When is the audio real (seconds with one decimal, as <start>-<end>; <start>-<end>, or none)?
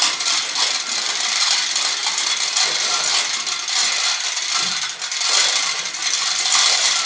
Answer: 2.0-6.3